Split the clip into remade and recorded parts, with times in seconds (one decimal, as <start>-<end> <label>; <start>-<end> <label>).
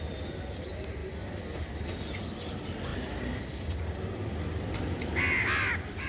0.0-2.9 recorded; 2.9-3.4 remade; 3.4-4.2 recorded; 4.2-6.1 remade